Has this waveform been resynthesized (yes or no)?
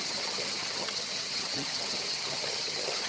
yes